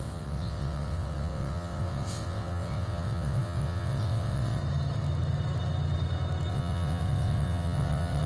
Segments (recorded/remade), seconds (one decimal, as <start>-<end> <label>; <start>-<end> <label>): 0.0-4.6 remade; 4.6-6.5 recorded; 6.5-8.3 remade